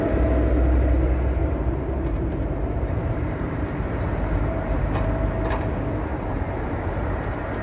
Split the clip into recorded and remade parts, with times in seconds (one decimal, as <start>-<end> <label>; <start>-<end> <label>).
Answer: 0.0-1.4 recorded; 1.4-4.8 remade; 4.8-6.1 recorded; 6.1-7.6 remade